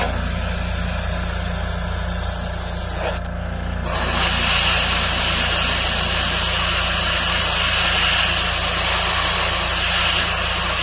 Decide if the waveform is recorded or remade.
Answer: recorded